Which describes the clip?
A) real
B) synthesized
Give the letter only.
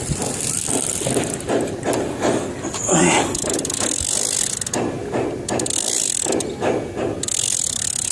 A